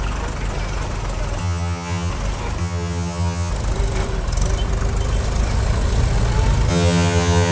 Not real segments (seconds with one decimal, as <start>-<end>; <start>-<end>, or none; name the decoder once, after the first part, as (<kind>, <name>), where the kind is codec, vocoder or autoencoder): 1.4-2.1 (vocoder, HiFi-GAN); 2.6-3.5; 6.7-7.5